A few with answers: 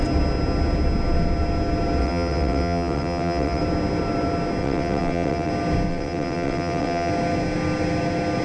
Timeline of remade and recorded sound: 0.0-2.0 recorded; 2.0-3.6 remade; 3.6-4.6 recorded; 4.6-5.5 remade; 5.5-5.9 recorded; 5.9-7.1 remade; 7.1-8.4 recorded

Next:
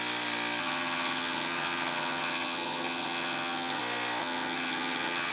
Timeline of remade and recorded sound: 0.0-0.6 recorded; 0.6-3.8 remade; 3.8-4.2 recorded; 4.2-5.3 remade

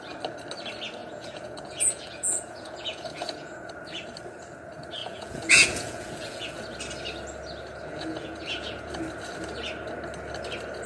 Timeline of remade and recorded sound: 0.0-1.0 recorded; 1.0-3.7 remade; 3.7-5.0 recorded; 5.0-6.6 remade; 6.6-7.9 recorded; 7.9-8.9 remade; 8.9-10.9 recorded

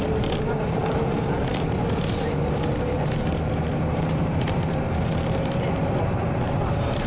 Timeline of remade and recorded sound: 0.0-7.1 remade

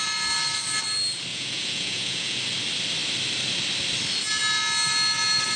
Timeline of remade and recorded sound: 0.0-1.3 recorded; 1.3-2.4 remade; 2.4-5.6 recorded